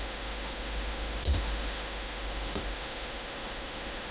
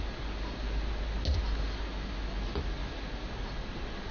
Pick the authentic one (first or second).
second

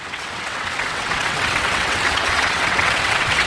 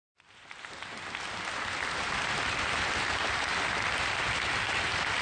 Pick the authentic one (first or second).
second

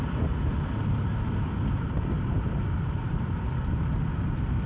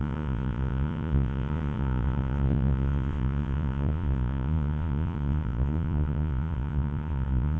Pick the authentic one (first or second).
first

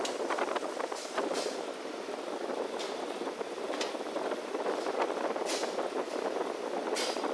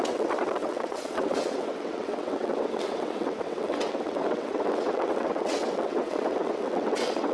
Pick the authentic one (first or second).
first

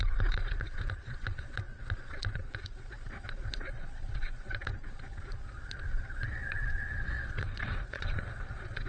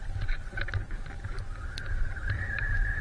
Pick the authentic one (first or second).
second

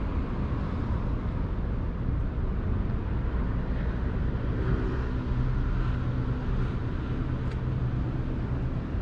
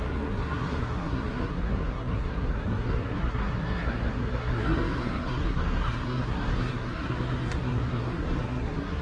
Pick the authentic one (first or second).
first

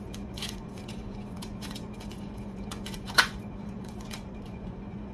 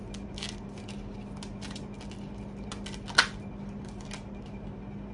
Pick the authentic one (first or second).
second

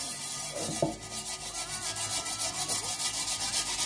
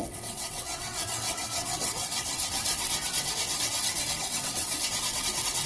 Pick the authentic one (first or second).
first